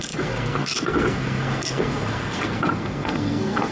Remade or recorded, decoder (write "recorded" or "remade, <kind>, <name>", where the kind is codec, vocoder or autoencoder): remade, codec, SNAC